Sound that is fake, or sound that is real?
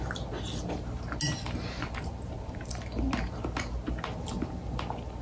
real